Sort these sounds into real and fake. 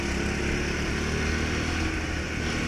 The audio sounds real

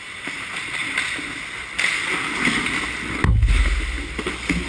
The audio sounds real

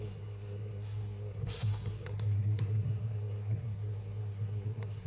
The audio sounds fake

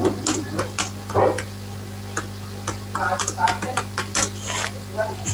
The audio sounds real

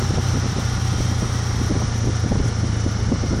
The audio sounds real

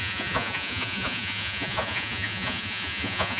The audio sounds fake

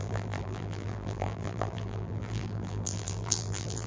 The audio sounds fake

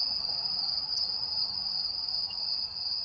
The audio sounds real